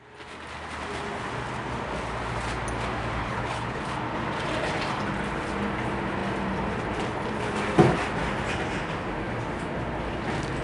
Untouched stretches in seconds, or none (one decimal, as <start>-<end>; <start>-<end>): 0.0-3.2; 3.8-10.6